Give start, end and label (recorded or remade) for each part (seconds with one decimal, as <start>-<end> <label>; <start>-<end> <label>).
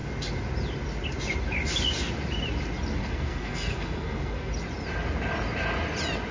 0.0-3.0 recorded; 3.0-4.5 remade; 4.5-6.3 recorded